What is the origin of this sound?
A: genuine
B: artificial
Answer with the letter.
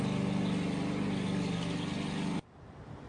A